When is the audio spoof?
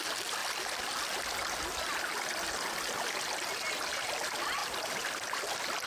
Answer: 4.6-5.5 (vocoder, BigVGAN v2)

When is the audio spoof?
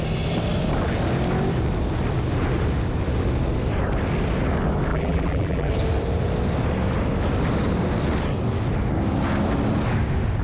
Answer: 4.9-5.7 (vocoder, BigVGAN v2)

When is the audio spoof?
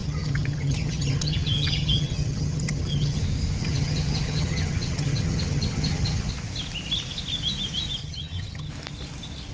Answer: 0.0-3.2 (vocoder, HiFi-GAN); 3.6-6.3; 8.0-8.7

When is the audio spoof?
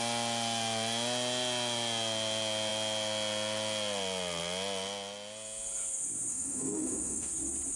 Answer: 6.3-7.3 (autoencoder, DAC-VAE)